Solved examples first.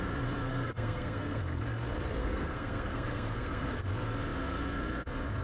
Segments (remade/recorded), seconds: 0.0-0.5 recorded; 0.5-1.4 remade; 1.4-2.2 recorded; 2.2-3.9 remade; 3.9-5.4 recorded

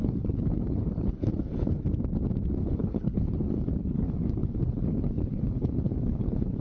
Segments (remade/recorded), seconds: 0.0-1.8 remade; 1.8-2.6 recorded; 2.6-6.6 remade

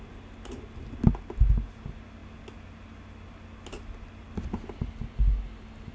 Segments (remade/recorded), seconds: 0.0-5.9 recorded

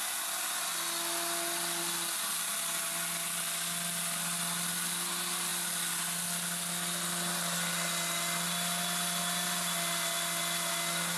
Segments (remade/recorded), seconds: 0.0-11.2 recorded